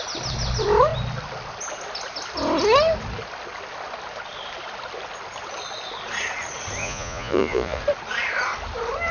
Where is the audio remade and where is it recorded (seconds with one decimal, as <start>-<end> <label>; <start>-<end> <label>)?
0.0-6.8 recorded; 6.8-7.8 remade; 7.8-9.1 recorded

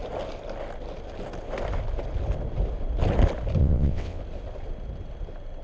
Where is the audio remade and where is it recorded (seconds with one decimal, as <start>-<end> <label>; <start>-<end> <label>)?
0.0-3.6 recorded; 3.6-4.2 remade; 4.2-5.6 recorded